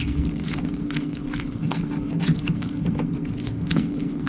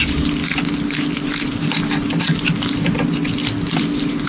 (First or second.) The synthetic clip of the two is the first